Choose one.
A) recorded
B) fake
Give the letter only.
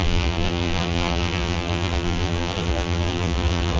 B